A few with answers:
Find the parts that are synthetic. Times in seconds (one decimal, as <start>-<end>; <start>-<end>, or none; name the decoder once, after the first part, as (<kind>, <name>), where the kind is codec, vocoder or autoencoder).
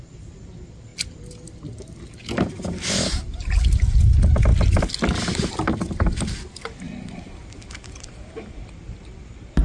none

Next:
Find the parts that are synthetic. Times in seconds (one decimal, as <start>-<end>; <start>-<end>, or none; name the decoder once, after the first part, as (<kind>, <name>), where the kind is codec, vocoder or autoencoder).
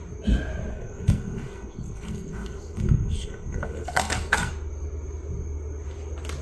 0.7-4.5 (codec, SNAC)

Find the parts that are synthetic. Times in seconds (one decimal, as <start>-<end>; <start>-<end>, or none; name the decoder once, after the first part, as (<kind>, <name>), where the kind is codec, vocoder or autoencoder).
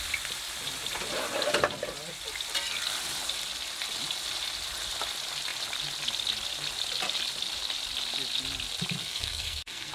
9.0-9.9 (codec, SNAC)